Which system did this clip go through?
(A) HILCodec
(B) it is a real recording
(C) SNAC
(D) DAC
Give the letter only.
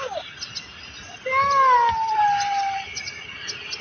B